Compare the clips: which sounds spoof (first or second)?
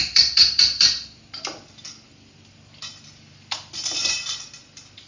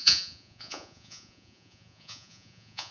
second